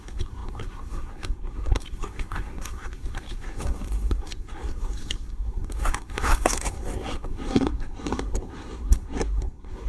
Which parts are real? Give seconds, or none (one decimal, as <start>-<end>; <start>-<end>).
none